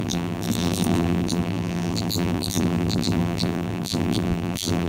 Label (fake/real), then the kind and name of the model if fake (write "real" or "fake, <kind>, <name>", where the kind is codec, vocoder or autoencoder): fake, vocoder, BigVGAN v2